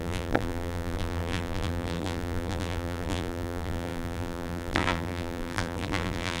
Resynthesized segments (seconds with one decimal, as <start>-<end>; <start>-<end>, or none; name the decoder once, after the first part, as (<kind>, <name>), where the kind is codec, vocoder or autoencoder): 0.0-6.4 (vocoder, BigVGAN v2)